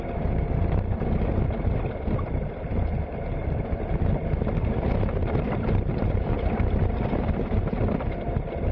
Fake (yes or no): no